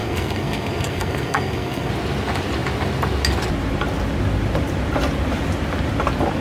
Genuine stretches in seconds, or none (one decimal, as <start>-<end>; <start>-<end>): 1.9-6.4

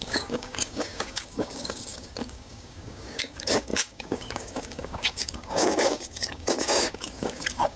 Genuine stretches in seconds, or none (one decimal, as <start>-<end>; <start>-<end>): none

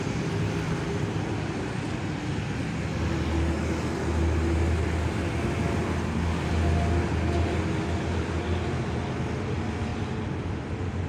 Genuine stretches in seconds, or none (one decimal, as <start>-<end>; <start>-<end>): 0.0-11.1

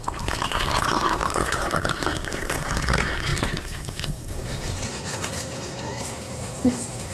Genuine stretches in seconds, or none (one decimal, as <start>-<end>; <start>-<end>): none

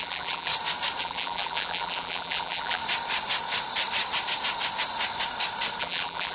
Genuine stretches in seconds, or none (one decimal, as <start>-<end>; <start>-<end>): 0.5-1.0; 2.8-5.8